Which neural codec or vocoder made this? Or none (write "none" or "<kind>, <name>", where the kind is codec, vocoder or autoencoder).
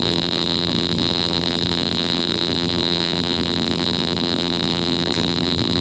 vocoder, BigVGAN v2